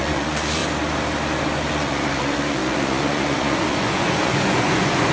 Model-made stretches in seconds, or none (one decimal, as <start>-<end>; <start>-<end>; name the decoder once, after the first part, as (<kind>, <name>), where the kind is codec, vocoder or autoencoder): 0.0-0.6 (vocoder, Vocos); 1.7-5.1